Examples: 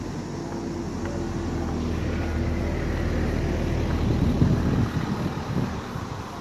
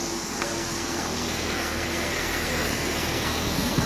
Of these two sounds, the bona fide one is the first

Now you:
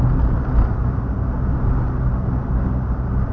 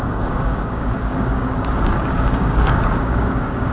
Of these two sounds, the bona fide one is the first